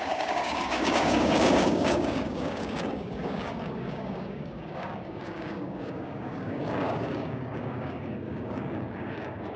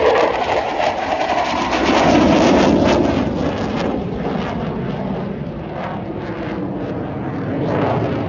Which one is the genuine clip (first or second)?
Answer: second